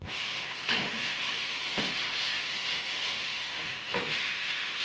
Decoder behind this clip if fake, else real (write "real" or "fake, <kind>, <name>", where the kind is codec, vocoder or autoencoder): fake, autoencoder, DAC-VAE